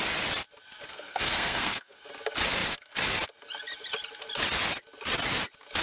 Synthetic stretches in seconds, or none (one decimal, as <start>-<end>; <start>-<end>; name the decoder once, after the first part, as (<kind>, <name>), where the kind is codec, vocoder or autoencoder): 0.9-2.0 (codec, SNAC)